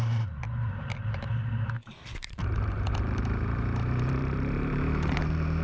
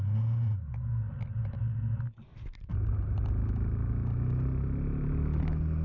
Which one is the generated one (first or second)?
first